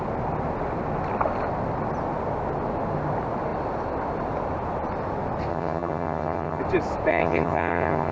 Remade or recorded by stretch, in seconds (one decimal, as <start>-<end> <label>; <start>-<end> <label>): 0.0-5.5 recorded; 5.5-6.6 remade; 6.6-7.1 recorded; 7.1-8.1 remade